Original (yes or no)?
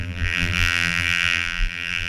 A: no